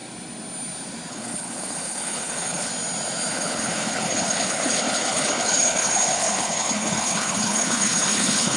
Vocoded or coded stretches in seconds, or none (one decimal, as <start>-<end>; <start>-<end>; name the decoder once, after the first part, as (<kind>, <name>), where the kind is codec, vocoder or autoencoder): 1.1-2.7 (codec, HILCodec); 3.3-8.6